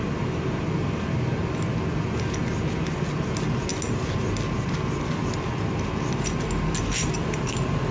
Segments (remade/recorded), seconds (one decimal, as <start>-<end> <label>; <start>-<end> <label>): 0.0-7.9 recorded